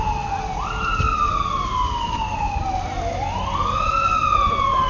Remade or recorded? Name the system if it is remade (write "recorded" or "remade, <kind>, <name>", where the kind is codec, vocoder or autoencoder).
recorded